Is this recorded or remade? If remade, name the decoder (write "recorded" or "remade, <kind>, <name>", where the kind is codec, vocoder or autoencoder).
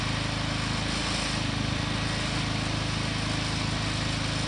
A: recorded